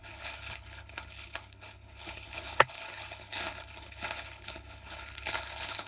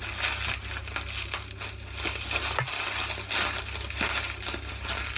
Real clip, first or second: second